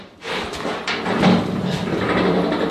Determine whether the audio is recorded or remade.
remade